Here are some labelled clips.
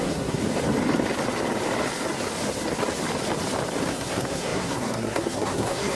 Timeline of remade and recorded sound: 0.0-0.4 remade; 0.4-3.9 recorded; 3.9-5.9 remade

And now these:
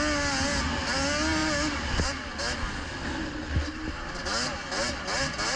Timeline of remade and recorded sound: 0.0-5.6 recorded